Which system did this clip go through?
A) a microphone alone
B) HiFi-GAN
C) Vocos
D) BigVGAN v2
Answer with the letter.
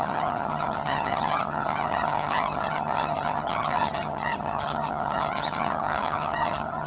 B